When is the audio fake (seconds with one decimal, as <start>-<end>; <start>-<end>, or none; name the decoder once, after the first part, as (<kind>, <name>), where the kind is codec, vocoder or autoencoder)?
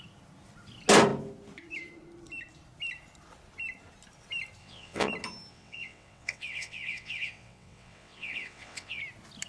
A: 4.6-5.1 (vocoder, WaveNeXt); 5.5-9.0